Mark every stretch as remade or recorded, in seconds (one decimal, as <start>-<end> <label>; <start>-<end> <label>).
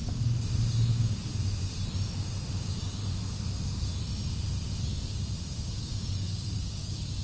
0.0-2.6 recorded; 2.6-3.0 remade; 3.0-4.8 recorded; 4.8-5.2 remade; 5.2-5.7 recorded; 5.7-7.2 remade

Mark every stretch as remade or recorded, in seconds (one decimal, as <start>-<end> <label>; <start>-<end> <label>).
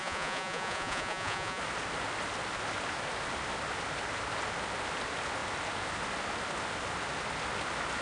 0.0-1.6 remade; 1.6-8.0 recorded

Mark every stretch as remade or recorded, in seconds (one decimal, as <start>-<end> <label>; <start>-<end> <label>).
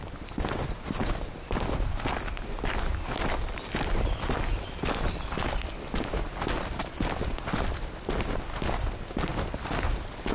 0.0-10.3 recorded